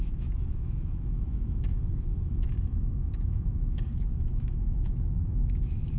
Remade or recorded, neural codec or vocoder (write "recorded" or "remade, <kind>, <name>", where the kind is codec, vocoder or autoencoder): remade, autoencoder, DAC-VAE